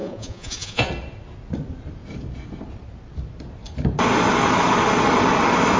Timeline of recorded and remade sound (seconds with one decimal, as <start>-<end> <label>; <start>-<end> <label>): 0.0-0.9 remade; 0.9-5.8 recorded